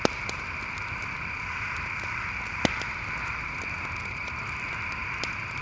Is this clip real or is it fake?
real